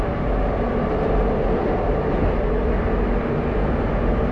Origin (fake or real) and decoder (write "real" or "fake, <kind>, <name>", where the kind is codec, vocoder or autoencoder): real